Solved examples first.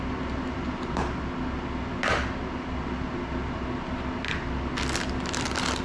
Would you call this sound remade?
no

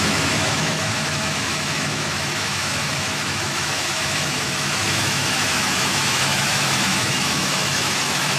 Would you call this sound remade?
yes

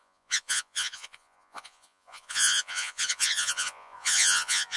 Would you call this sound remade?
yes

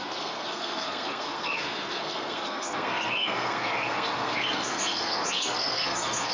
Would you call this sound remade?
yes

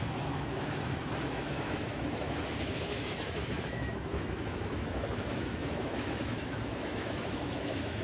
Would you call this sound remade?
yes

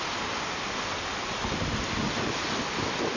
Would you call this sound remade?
no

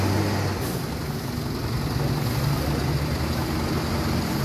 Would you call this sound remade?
no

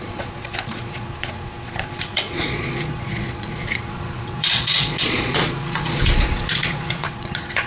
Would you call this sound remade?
yes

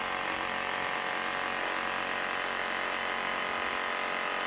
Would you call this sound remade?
no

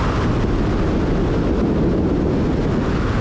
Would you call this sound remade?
no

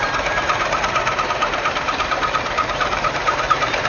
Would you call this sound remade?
yes